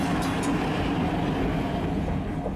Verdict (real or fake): real